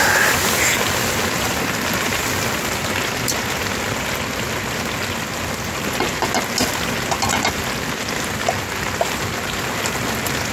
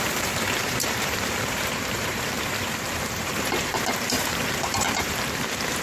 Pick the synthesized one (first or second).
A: second